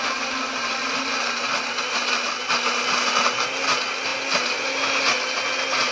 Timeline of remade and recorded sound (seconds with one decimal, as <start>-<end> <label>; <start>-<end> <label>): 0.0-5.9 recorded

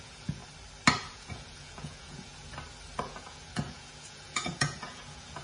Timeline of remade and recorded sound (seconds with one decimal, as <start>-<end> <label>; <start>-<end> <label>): 0.0-0.4 remade; 0.4-1.0 recorded; 1.0-2.3 remade; 2.3-3.0 recorded; 3.0-5.4 remade

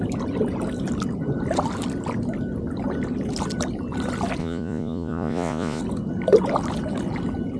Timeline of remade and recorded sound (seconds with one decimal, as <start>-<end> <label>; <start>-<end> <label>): 0.0-4.4 recorded; 4.4-5.8 remade; 5.8-7.6 recorded

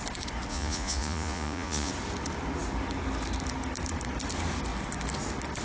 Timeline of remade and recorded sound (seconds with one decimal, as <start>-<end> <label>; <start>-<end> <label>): 0.0-0.5 recorded; 0.5-1.9 remade; 1.9-5.6 recorded

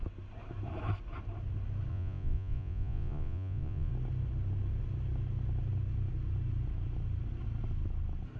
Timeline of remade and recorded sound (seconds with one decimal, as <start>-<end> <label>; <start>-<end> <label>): 0.0-1.9 recorded; 1.9-3.9 remade; 3.9-8.4 recorded

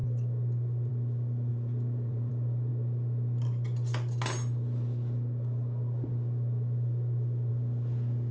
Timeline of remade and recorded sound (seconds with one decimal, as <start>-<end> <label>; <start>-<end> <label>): 0.0-1.5 recorded; 1.5-2.3 remade; 2.3-8.3 recorded

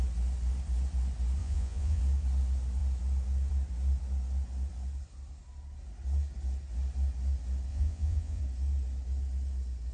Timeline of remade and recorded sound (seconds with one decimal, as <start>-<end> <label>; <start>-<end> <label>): 0.0-1.4 recorded; 1.4-2.0 remade; 2.0-7.7 recorded; 7.7-8.4 remade; 8.4-9.9 recorded

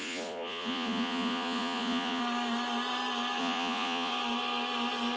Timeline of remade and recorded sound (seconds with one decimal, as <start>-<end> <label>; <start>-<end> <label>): 0.0-2.2 remade; 2.2-3.4 recorded; 3.4-4.1 remade; 4.1-5.2 recorded